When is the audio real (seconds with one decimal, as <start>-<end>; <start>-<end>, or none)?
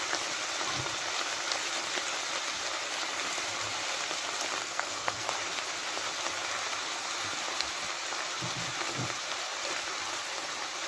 0.0-4.6; 5.3-10.9